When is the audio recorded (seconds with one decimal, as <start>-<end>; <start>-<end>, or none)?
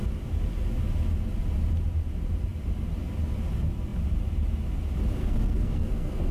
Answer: 0.0-5.2